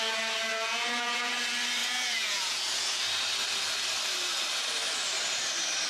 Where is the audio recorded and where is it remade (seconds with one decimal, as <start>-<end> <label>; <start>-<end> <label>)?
0.0-0.5 recorded; 0.5-1.3 remade; 1.3-1.8 recorded; 1.8-3.0 remade; 3.0-5.9 recorded